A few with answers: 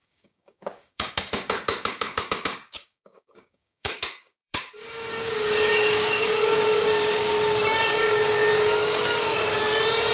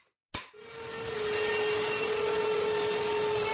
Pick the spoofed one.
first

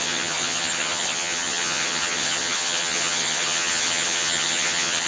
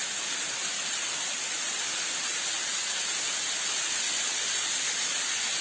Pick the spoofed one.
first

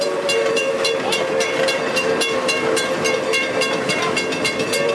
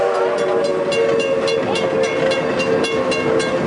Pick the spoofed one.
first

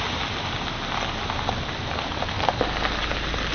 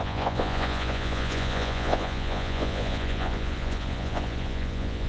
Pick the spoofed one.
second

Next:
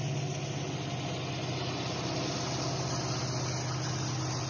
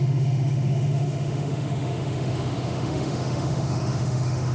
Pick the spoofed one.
second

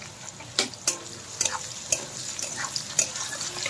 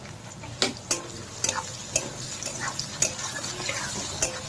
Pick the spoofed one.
first